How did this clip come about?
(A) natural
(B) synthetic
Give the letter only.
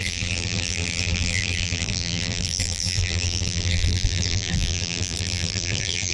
B